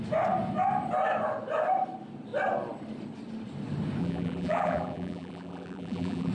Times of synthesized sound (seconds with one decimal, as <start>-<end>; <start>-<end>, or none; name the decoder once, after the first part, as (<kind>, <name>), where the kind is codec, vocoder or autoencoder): 4.0-6.3 (vocoder, BigVGAN v2)

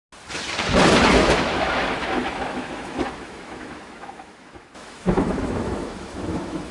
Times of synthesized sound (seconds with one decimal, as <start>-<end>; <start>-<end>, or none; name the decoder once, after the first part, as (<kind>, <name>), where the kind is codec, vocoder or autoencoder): 1.1-6.7 (autoencoder, DAC-VAE)

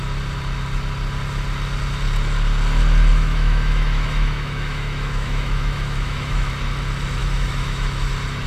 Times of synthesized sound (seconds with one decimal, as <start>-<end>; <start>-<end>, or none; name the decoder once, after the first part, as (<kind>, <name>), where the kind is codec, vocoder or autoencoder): 3.1-6.5 (autoencoder, DAC-VAE); 7.2-8.1